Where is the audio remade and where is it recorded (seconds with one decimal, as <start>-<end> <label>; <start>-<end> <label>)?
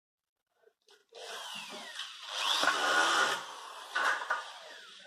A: 0.0-1.0 remade; 1.0-3.9 recorded; 3.9-5.1 remade